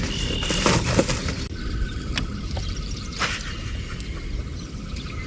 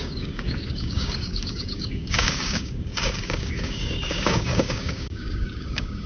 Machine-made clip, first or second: second